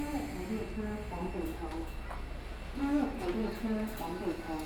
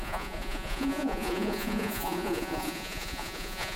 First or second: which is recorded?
first